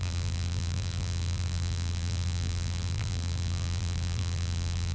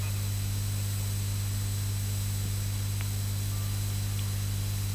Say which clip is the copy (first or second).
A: first